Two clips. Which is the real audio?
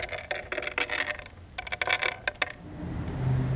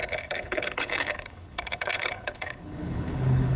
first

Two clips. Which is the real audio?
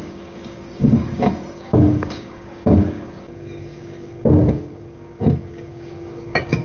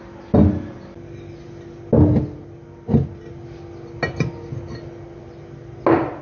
second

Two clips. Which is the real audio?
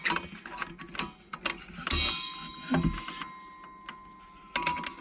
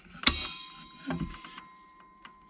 first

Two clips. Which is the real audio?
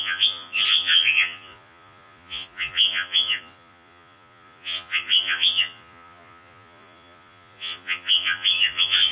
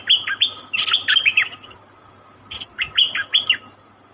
second